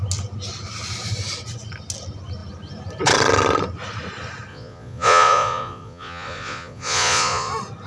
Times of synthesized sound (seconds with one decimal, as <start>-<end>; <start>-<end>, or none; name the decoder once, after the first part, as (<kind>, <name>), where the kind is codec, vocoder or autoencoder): 4.5-7.5 (vocoder, Vocos)